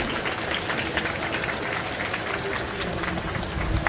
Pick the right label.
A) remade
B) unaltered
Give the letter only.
B